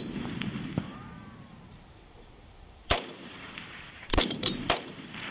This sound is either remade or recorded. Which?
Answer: remade